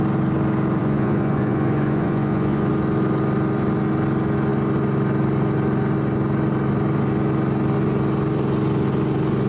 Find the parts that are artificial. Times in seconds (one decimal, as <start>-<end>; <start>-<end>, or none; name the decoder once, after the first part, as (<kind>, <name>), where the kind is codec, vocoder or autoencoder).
0.8-2.7 (vocoder, Vocos)